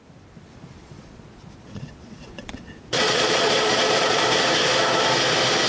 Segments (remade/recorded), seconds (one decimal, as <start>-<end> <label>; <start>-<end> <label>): 0.0-0.8 recorded; 0.8-4.2 remade; 4.2-5.7 recorded